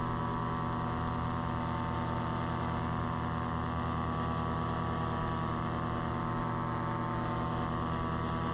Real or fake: real